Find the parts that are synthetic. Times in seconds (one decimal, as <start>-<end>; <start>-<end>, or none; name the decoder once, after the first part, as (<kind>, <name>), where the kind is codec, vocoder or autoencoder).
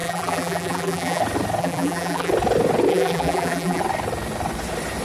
0.0-1.2 (vocoder, BigVGAN v2); 1.6-2.3; 2.9-3.8